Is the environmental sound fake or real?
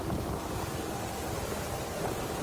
fake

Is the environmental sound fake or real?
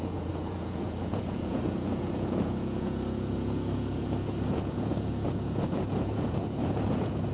fake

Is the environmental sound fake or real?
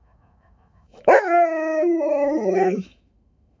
fake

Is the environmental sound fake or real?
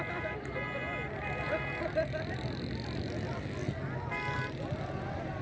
real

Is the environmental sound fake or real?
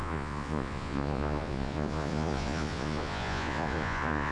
fake